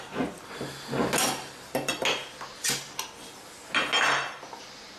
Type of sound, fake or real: real